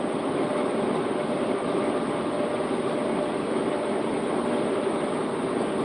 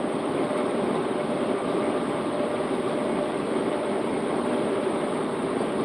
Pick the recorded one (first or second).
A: first